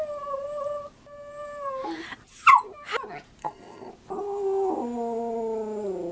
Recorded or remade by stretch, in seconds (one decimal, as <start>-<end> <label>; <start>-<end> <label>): 0.0-3.4 recorded; 3.4-3.9 remade; 3.9-6.1 recorded